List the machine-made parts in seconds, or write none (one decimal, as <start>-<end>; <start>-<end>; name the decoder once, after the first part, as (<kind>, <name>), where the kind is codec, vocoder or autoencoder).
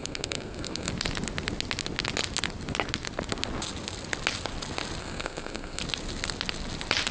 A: 0.0-0.9 (codec, SNAC); 5.0-5.8